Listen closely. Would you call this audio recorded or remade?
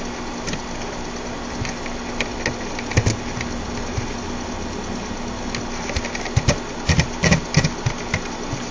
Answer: recorded